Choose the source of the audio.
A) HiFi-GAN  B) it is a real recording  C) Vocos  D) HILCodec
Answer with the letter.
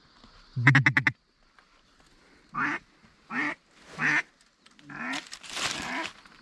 B